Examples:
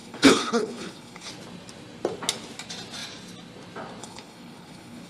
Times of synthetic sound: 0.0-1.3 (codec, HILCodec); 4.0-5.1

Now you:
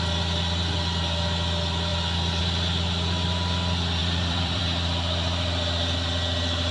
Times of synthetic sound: 4.0-4.6 (vocoder, BigVGAN v2)